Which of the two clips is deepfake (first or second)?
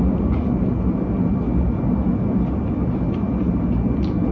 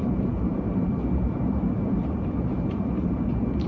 second